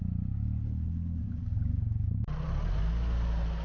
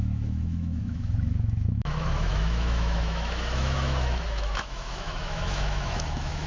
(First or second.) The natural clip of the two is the first